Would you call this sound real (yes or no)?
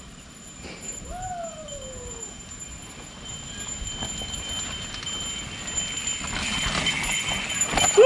yes